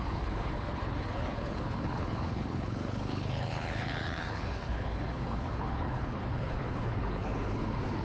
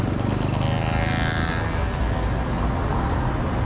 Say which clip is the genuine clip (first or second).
second